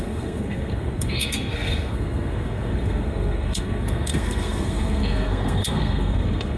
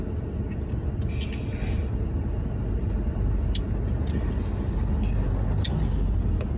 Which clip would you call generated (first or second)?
first